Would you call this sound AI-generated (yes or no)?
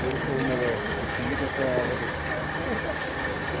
yes